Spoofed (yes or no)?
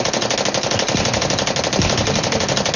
no